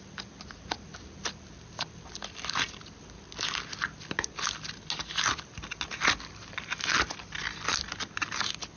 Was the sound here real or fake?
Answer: real